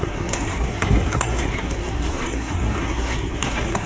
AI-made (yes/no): yes